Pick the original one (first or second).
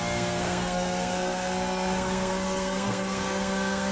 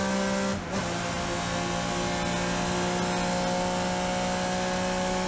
second